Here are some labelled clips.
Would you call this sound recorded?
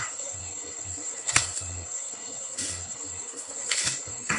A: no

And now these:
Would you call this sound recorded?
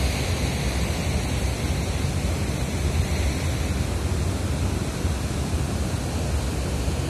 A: yes